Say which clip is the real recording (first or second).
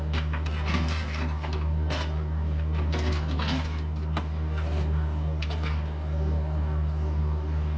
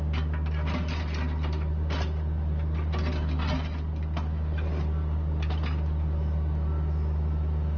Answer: second